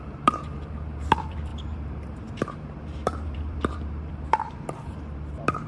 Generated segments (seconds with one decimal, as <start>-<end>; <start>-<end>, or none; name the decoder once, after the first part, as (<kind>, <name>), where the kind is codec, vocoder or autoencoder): 0.0-5.7 (vocoder, BigVGAN v2)